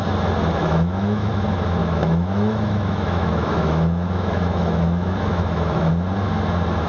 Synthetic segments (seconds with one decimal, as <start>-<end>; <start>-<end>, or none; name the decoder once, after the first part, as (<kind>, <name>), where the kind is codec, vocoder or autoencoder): 0.6-1.3 (autoencoder, DAC-VAE); 1.8-5.9